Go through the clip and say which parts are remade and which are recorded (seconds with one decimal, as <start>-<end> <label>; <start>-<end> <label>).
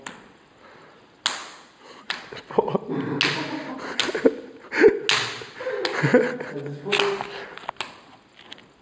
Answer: 0.0-1.4 recorded; 1.4-2.3 remade; 2.3-8.8 recorded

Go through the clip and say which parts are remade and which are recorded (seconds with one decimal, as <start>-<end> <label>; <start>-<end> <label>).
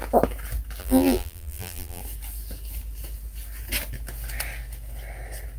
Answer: 0.0-0.8 recorded; 0.8-2.0 remade; 2.0-5.6 recorded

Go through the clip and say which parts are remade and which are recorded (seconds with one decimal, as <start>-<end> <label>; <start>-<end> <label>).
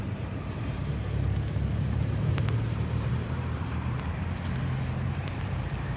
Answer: 0.0-4.2 remade; 4.2-4.8 recorded; 4.8-6.0 remade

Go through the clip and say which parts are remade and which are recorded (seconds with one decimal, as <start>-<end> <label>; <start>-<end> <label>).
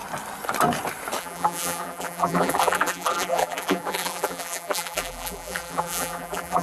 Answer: 0.0-1.2 recorded; 1.2-6.6 remade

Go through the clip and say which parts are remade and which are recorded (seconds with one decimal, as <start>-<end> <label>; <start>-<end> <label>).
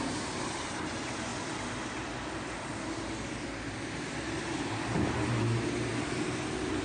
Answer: 0.0-1.3 remade; 1.3-4.4 recorded; 4.4-5.9 remade; 5.9-6.8 recorded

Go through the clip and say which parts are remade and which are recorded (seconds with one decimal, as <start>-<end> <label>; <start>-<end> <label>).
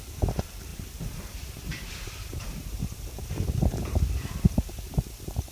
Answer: 0.0-0.7 recorded; 0.7-4.0 remade; 4.0-5.5 recorded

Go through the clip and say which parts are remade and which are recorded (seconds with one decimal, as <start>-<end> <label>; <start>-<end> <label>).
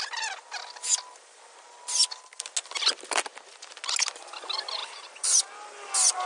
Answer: 0.0-4.8 recorded; 4.8-5.5 remade; 5.5-6.3 recorded